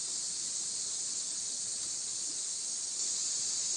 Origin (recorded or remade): recorded